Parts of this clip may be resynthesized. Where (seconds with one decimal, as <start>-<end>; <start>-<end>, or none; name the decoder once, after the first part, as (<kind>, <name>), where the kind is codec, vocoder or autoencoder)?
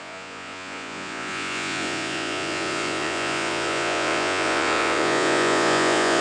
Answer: 0.0-6.2 (vocoder, Vocos)